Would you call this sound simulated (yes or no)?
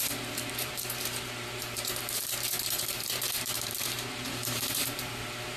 yes